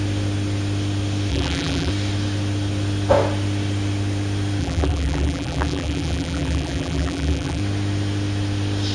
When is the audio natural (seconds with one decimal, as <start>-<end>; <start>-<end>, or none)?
0.0-1.3; 1.9-4.6; 7.6-8.9